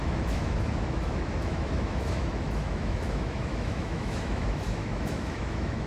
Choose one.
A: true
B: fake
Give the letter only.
B